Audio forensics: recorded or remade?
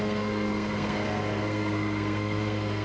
remade